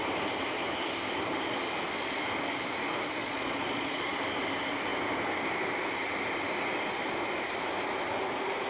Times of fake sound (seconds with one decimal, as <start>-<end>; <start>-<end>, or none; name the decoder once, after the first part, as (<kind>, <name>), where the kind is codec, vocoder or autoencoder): 3.2-4.1 (vocoder, Vocos)